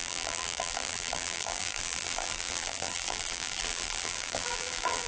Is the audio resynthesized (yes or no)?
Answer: yes